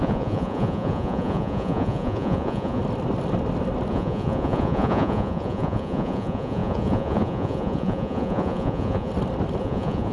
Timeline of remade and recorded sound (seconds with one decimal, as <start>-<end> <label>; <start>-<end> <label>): 0.0-2.8 remade; 2.8-3.9 recorded; 3.9-9.1 remade; 9.1-9.6 recorded; 9.6-10.1 remade